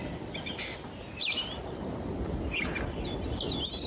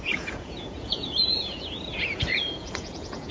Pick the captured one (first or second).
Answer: first